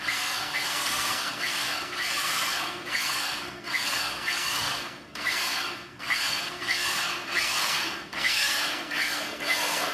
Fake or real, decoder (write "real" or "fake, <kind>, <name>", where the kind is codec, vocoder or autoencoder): fake, codec, SNAC